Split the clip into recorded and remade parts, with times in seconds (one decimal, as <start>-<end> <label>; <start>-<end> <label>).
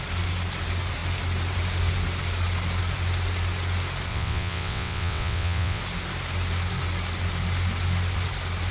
0.0-4.1 recorded; 4.1-5.8 remade; 5.8-8.7 recorded